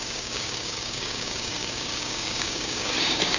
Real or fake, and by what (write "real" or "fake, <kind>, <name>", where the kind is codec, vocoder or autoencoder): fake, codec, DAC